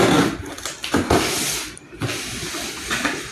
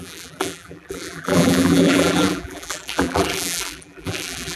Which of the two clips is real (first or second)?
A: first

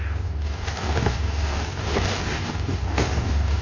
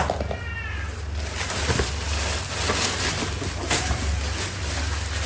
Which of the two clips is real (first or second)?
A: second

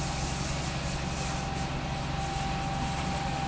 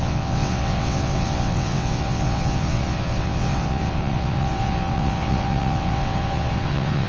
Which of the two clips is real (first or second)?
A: first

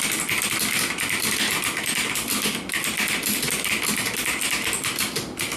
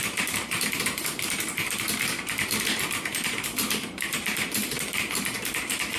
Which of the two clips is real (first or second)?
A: first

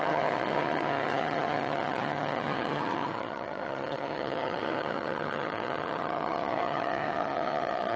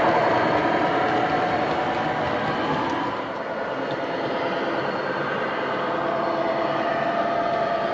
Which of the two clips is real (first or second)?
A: second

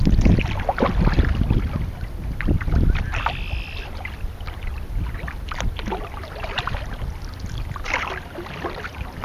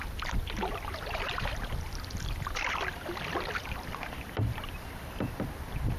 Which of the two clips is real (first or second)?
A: first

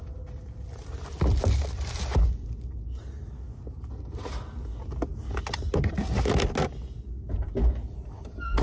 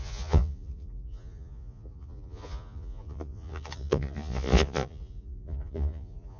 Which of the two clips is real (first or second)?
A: first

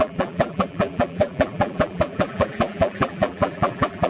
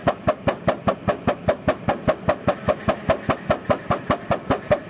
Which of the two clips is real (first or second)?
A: second